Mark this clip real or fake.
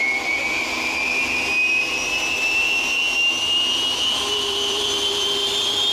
fake